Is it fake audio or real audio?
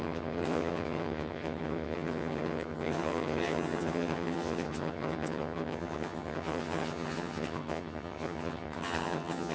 fake